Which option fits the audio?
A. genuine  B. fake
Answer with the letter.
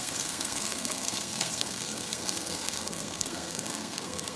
B